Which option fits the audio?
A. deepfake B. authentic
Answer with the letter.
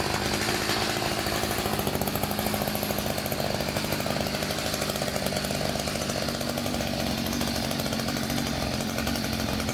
B